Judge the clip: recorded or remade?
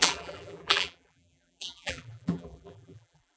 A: remade